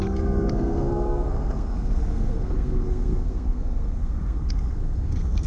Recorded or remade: remade